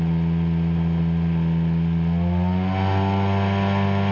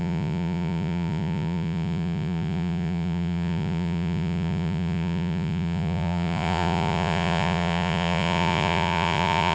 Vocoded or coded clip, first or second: second